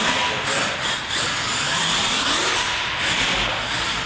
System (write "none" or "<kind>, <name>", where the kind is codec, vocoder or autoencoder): none